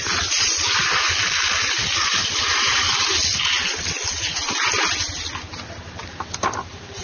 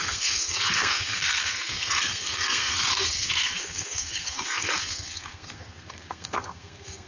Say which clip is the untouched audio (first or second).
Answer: first